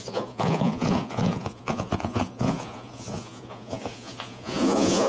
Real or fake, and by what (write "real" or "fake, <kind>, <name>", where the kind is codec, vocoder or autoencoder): fake, vocoder, Vocos